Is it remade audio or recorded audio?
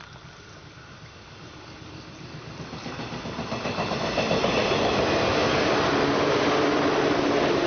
recorded